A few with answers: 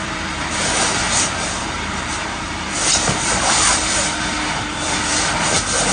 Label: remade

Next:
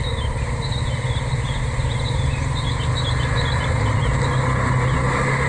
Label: recorded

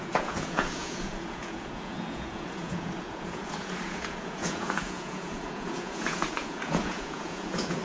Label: remade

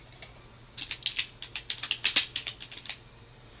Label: recorded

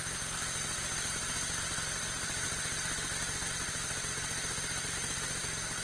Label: recorded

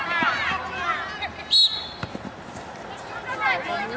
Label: recorded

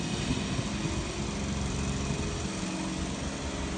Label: recorded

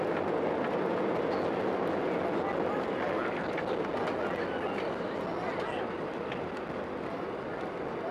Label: recorded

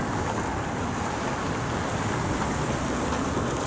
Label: recorded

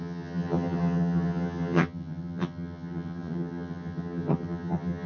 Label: remade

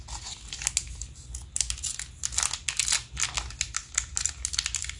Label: recorded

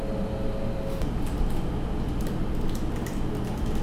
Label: recorded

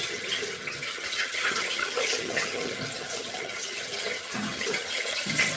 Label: remade